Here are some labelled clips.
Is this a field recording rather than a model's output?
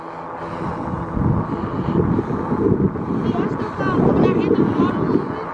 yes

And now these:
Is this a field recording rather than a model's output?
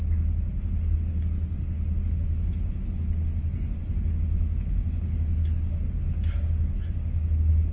yes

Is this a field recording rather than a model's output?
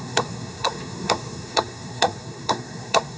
no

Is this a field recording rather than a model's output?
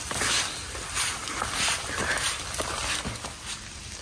yes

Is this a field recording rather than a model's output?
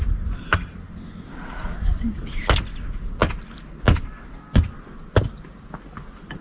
yes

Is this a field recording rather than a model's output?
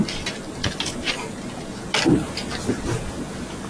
yes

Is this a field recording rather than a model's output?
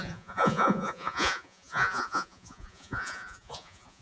no